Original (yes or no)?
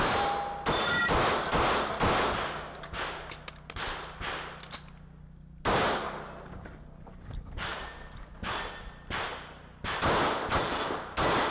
yes